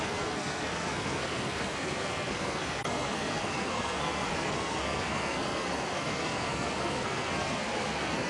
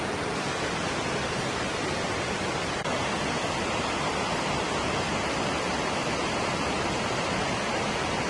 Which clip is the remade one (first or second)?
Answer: first